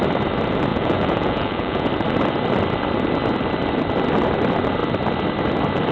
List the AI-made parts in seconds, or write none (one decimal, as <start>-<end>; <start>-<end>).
0.7-1.9